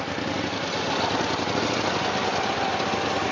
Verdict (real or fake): real